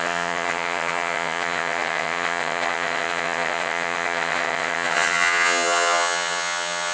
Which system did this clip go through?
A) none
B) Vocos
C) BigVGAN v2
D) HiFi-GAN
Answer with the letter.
D